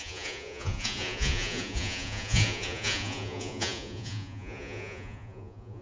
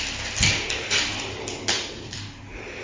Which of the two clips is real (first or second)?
second